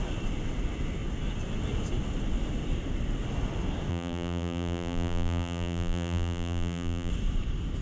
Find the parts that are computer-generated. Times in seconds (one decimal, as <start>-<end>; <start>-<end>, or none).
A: 3.9-7.1